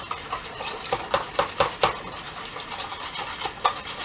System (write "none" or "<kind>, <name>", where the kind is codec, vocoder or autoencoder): none